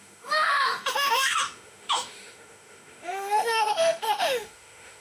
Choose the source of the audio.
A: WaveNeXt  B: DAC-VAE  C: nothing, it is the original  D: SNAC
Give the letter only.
B